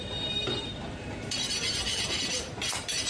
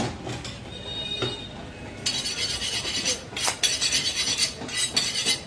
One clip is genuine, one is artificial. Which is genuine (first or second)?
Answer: second